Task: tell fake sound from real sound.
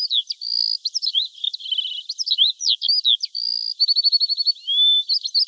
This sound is real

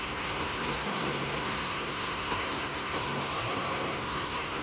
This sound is fake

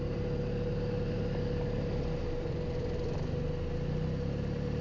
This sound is real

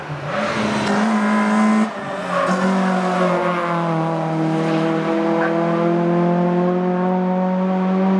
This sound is real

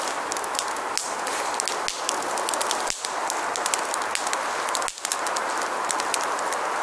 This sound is real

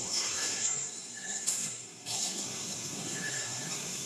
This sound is fake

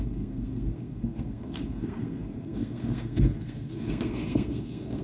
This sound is fake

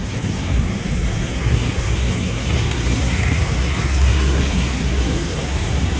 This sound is fake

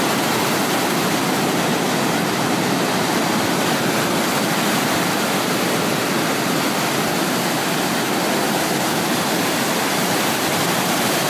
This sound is real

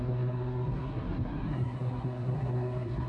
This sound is fake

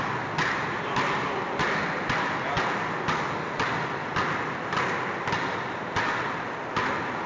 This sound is real